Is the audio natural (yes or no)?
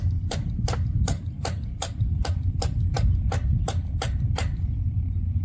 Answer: no